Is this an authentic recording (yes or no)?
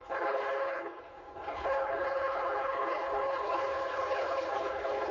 no